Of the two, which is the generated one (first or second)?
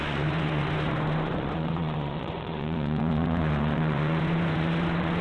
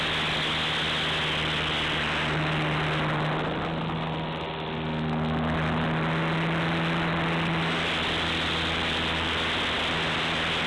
first